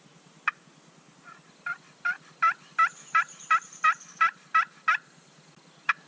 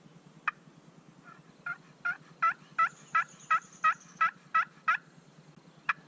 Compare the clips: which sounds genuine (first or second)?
second